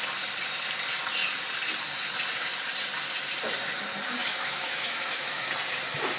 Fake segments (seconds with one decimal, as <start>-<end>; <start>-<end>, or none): 4.2-5.5